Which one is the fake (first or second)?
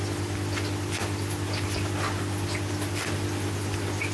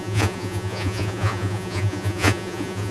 second